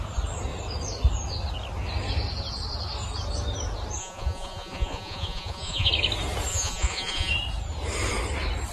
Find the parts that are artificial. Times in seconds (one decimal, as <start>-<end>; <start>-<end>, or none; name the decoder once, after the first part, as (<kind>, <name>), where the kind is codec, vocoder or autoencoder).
4.0-5.9 (vocoder, Vocos); 6.5-7.3